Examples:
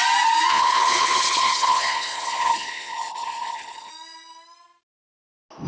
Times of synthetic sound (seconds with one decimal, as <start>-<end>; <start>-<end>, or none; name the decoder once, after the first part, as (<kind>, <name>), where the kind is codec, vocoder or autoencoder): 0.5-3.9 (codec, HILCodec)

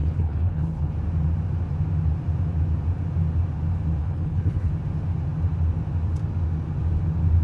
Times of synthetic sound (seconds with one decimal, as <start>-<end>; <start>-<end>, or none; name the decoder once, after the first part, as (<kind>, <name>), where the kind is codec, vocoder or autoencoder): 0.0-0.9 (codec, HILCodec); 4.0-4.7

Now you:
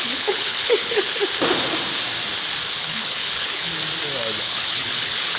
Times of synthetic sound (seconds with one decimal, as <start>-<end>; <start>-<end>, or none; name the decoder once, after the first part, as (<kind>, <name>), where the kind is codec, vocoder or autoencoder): 0.0-1.2 (codec, HILCodec); 2.7-3.7; 4.4-5.4

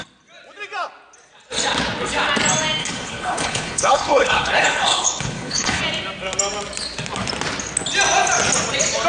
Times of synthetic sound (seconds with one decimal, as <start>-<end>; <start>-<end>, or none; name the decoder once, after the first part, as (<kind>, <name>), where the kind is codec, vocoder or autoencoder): 2.8-5.8 (codec, HILCodec)